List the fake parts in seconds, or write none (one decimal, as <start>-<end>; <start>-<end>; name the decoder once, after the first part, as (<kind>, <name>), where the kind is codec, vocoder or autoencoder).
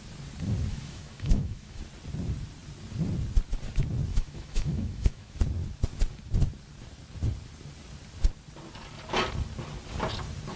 0.7-1.8 (autoencoder, DAC-VAE); 4.1-5.4